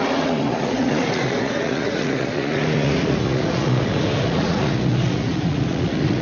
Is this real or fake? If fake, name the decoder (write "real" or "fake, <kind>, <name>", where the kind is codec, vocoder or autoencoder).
fake, vocoder, Vocos